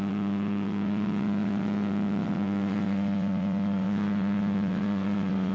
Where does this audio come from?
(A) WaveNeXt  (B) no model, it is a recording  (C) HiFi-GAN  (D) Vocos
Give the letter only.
A